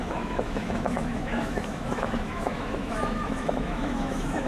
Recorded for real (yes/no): no